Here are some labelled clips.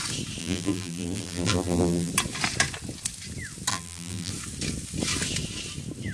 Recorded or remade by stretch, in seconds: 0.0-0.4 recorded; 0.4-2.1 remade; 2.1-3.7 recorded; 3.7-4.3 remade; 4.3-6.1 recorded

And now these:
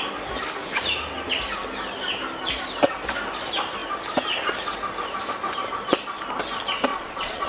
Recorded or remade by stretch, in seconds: 0.0-6.9 recorded; 6.9-7.5 remade